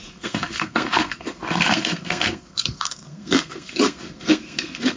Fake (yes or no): yes